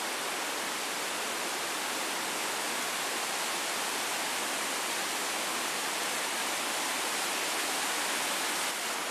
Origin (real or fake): real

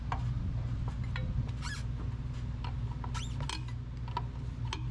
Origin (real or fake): real